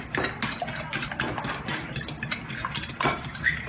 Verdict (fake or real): real